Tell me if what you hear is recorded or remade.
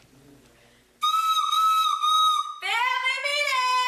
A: recorded